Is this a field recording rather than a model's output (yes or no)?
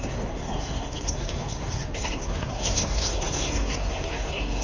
no